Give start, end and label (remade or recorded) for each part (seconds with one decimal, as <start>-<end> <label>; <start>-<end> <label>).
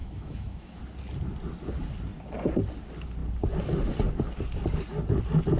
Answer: 0.0-0.8 remade; 0.8-5.6 recorded